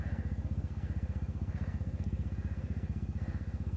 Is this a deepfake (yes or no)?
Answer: yes